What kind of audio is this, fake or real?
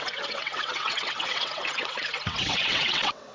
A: fake